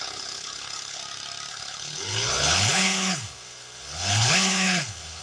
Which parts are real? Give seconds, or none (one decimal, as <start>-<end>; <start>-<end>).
1.0-1.5